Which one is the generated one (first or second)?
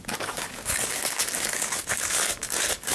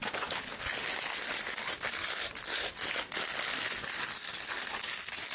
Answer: first